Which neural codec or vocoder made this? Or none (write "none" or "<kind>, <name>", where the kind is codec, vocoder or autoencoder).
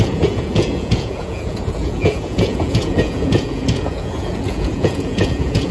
vocoder, Vocos